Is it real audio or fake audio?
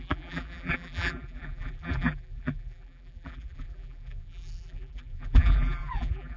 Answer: fake